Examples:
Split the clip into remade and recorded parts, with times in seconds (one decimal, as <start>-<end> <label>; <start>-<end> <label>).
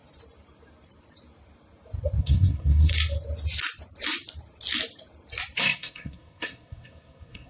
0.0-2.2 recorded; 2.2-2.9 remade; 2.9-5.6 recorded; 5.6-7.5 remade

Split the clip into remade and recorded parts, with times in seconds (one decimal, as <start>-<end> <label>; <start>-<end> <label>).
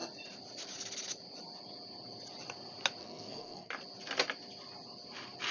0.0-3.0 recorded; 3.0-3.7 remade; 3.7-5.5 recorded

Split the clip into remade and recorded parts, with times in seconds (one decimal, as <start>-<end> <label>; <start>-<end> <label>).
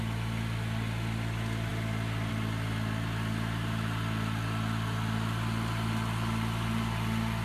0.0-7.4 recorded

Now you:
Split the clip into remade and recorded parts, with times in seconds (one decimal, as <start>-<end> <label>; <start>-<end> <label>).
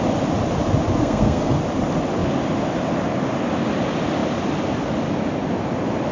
0.0-1.0 recorded; 1.0-1.6 remade; 1.6-6.1 recorded